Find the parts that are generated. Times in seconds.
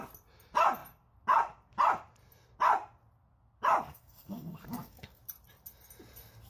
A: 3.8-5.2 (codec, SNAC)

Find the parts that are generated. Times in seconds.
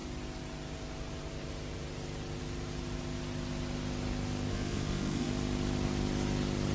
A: 4.5-5.3 (codec, SNAC)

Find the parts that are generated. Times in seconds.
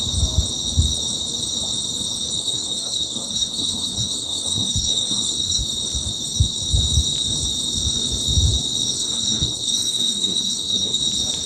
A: 2.4-5.6 (codec, SNAC); 8.9-11.0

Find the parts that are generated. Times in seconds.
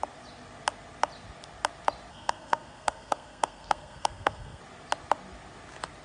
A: 2.1-4.6 (codec, SNAC)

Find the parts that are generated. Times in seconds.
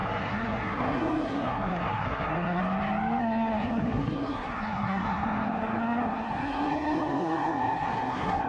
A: 0.0-2.6 (codec, SNAC); 3.2-8.5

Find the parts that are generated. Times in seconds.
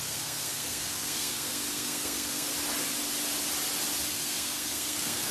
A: 0.0-2.5 (codec, SNAC); 4.1-5.3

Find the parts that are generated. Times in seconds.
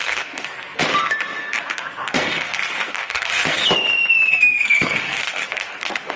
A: 0.0-0.8 (codec, SNAC); 1.4-3.6; 4.3-6.2